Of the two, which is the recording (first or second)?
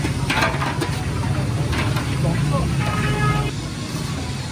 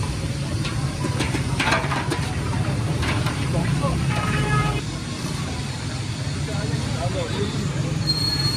first